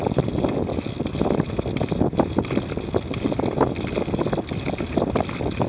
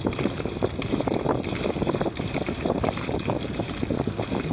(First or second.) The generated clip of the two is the second